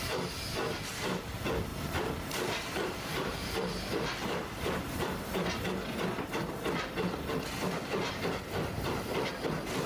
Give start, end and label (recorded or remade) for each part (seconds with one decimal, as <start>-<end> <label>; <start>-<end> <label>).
0.0-1.7 recorded; 1.7-5.6 remade; 5.6-9.9 recorded